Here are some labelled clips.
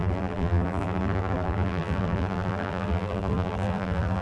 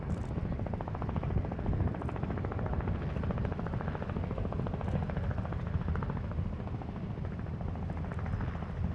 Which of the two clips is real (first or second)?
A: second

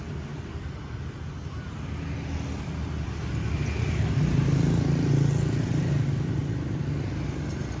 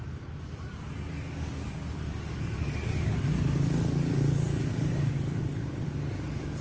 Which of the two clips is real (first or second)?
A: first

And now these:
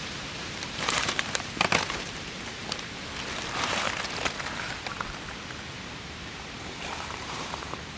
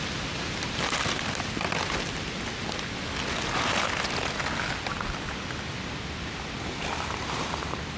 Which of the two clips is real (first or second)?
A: second